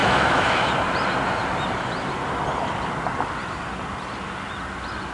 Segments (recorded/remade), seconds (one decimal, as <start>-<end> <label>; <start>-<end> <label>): 0.0-0.7 remade; 0.7-5.1 recorded